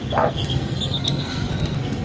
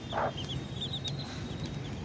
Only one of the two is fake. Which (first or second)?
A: first